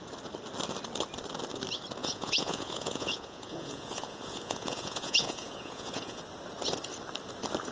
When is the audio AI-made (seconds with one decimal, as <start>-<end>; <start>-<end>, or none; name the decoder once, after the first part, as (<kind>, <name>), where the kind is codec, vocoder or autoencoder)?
2.0-6.2 (vocoder, Vocos)